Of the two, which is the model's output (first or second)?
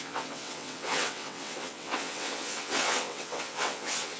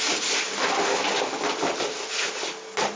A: first